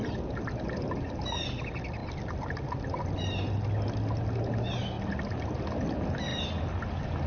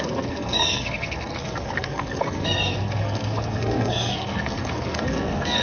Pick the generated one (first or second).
second